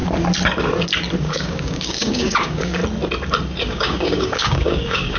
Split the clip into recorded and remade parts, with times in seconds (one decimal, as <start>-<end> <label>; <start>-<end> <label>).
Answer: 0.0-1.2 recorded; 1.2-2.8 remade; 2.8-3.6 recorded; 3.6-5.2 remade